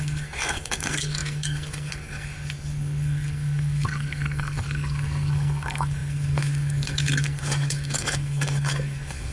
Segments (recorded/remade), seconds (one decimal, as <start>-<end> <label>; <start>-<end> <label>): 0.0-9.3 remade